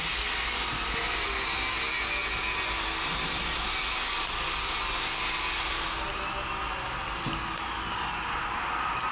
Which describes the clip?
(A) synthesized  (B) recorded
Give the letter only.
B